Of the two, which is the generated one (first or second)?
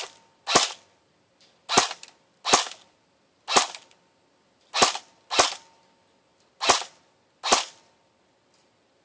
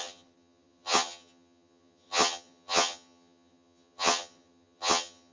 second